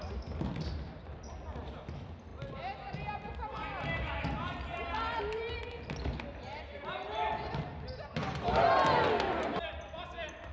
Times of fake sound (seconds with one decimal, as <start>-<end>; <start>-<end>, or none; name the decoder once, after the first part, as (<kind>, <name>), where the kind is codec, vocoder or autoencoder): none